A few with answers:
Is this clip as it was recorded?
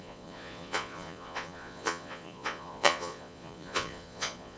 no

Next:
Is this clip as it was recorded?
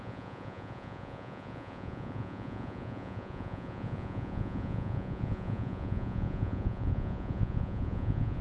no